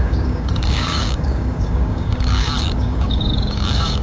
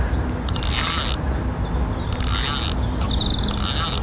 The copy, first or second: first